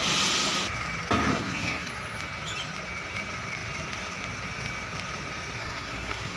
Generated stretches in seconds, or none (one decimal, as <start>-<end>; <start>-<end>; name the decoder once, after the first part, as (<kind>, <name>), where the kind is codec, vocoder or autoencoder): 1.3-1.9 (codec, SNAC); 5.6-6.4